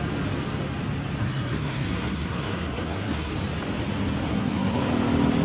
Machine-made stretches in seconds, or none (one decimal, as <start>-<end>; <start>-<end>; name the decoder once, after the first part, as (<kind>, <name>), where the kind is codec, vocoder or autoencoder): 1.2-3.3 (codec, SNAC); 4.2-4.8

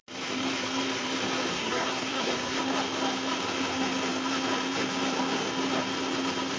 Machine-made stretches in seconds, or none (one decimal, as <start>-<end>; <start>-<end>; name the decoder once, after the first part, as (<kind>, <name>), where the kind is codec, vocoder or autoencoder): 1.5-2.6 (codec, SNAC)

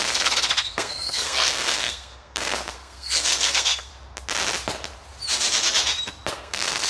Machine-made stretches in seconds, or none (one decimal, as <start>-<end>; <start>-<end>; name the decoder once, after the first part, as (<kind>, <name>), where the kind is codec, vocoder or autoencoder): 0.0-3.9 (codec, SNAC); 6.3-6.9

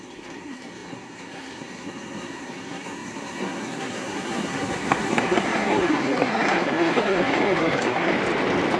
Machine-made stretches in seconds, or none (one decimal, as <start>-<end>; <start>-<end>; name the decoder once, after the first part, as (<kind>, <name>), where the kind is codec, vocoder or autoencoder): 0.0-8.1 (codec, SNAC)

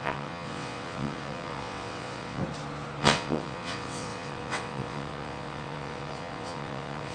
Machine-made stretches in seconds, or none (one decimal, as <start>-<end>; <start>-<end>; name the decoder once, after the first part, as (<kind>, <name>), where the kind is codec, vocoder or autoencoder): 0.0-2.4 (vocoder, WaveNeXt); 3.0-7.1

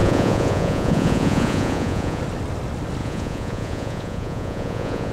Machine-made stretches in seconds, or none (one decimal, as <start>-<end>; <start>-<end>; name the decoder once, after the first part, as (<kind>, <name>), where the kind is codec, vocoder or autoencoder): 0.0-2.2 (vocoder, Vocos); 3.0-5.1

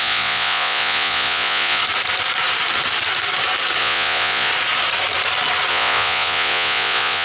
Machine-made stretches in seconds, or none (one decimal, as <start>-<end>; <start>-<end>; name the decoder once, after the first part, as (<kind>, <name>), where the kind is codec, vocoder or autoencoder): 0.0-1.8 (vocoder, Vocos); 3.8-4.5; 5.7-7.2

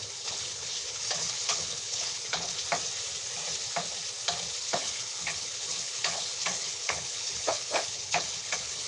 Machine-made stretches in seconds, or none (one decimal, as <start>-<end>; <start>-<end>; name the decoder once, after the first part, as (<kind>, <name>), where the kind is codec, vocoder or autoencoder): 0.0-2.6 (codec, HILCodec); 4.6-8.9